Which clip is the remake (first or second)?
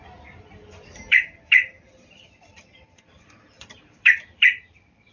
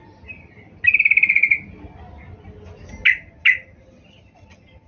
first